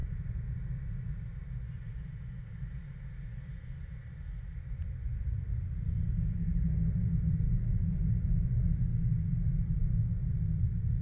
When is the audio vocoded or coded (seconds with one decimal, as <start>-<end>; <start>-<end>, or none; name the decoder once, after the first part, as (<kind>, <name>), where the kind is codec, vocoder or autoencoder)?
none